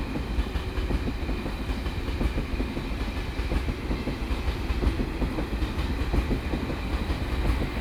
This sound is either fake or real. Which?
real